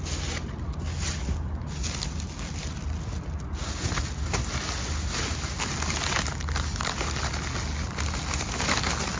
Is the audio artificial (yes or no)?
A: no